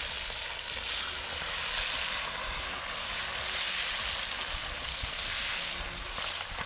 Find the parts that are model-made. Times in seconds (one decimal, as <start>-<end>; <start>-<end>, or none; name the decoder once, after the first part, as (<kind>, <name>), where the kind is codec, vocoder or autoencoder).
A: 4.9-5.7 (codec, SNAC)